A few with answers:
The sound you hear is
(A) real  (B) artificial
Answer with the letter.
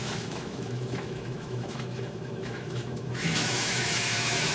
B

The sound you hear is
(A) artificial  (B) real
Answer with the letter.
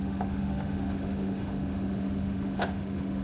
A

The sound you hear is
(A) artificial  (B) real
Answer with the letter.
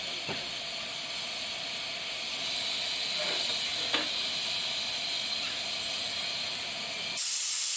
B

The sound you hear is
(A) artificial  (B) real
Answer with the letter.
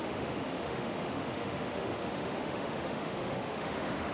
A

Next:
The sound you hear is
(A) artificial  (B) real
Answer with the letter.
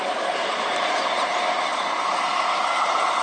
B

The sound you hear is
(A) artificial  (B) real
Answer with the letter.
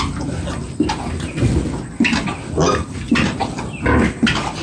B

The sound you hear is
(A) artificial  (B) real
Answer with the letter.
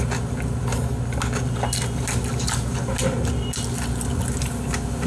B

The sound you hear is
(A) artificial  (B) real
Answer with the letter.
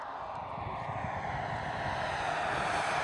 B